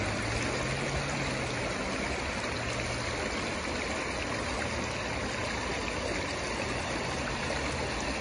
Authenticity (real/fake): real